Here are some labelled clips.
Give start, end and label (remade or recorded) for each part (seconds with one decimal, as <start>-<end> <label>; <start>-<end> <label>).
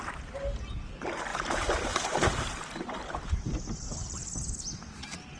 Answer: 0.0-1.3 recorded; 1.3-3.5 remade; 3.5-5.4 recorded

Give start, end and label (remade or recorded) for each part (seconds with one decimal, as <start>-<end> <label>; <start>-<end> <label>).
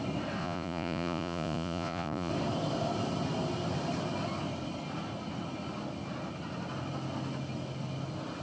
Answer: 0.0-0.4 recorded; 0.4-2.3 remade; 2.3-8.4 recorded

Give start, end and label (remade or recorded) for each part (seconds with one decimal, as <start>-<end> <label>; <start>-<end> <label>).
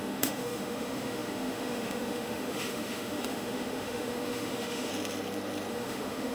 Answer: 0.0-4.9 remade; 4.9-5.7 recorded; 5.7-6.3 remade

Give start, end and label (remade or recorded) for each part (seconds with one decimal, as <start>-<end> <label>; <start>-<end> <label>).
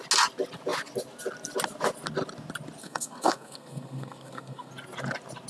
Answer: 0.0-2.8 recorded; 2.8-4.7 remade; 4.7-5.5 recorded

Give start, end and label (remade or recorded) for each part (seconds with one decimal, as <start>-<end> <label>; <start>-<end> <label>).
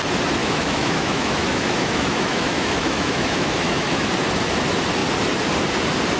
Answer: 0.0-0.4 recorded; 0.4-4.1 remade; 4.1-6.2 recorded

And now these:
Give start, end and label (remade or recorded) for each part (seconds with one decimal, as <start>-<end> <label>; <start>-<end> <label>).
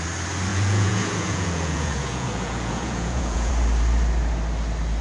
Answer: 0.0-0.5 recorded; 0.5-3.5 remade; 3.5-5.0 recorded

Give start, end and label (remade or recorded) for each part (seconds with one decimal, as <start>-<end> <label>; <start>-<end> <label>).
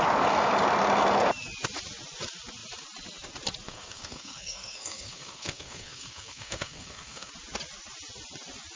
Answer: 0.0-3.7 recorded; 3.7-7.3 remade; 7.3-8.8 recorded